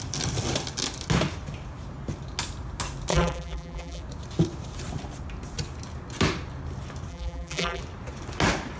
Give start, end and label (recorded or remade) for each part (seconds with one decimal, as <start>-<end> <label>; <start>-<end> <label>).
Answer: 0.0-3.1 recorded; 3.1-4.0 remade; 4.0-7.1 recorded; 7.1-7.8 remade; 7.8-8.8 recorded